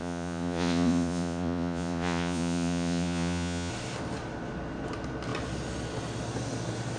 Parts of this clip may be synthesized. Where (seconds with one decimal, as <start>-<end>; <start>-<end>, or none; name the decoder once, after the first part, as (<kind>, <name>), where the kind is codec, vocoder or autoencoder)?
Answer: 0.0-3.7 (vocoder, Vocos)